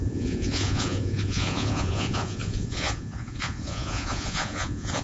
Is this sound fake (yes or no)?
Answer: yes